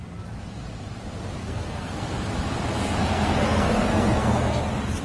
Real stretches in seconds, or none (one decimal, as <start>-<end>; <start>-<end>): 0.0-1.4; 2.3-3.0; 4.6-5.0